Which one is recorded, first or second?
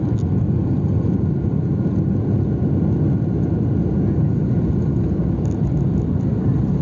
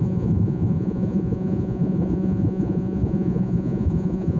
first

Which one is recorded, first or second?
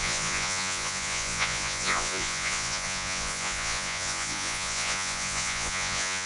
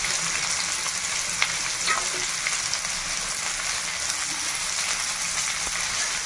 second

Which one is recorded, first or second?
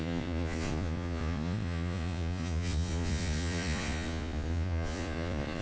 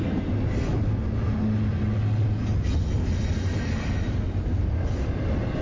second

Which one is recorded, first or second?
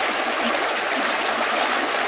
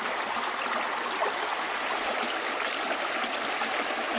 second